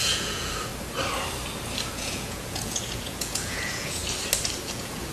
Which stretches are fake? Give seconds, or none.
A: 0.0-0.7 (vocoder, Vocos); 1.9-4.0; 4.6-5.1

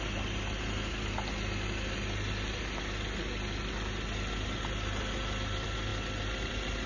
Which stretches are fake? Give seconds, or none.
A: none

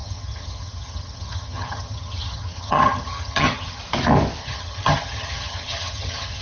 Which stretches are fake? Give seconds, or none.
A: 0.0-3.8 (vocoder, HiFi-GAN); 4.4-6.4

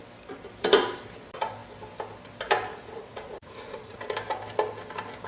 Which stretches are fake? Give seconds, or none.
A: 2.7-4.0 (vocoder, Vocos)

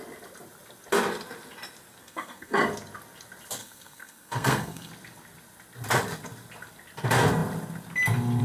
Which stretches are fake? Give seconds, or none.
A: 2.0-2.6 (codec, SNAC); 3.6-4.9

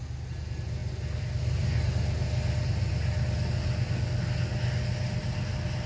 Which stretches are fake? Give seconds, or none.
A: none

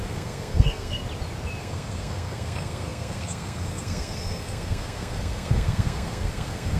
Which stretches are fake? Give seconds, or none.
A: 0.0-1.0 (codec, SNAC); 1.6-6.8